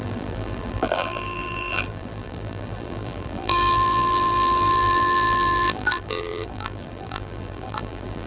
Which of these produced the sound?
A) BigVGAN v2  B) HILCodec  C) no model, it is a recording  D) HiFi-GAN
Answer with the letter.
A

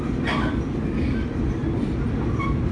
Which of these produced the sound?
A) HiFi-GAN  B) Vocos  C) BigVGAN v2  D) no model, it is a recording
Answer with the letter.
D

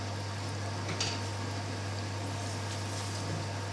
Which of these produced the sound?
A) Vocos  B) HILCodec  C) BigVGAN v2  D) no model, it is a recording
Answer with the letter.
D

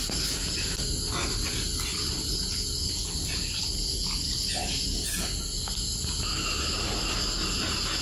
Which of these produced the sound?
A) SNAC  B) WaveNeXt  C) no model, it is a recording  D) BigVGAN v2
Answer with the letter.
C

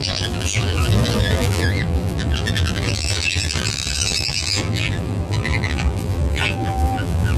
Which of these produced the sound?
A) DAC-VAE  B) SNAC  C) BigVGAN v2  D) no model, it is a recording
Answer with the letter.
C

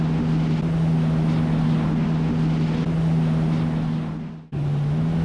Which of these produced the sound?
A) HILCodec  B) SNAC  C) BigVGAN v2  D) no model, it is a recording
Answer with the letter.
D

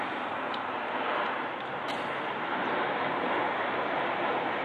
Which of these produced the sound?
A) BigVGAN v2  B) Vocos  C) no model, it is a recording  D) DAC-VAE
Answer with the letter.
A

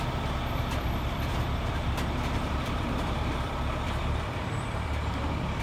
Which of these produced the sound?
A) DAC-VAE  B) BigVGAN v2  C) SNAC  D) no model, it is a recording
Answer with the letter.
B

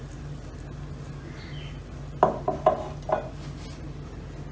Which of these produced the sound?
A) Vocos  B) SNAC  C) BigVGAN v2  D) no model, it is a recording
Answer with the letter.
D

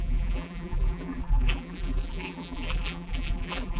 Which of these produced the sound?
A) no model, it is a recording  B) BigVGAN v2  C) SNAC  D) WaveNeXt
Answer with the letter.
B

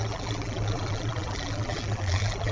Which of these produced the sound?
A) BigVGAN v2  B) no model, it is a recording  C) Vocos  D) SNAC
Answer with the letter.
A